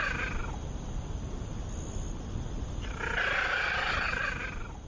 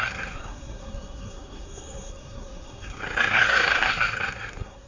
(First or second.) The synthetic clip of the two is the second